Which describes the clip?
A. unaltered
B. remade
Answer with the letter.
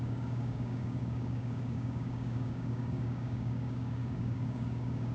B